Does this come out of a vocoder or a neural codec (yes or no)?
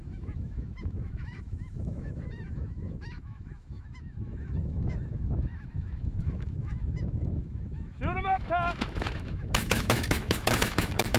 yes